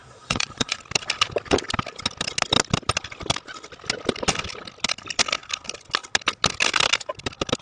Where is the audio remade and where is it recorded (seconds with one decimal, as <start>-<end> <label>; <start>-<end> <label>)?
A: 0.0-0.8 remade; 0.8-7.6 recorded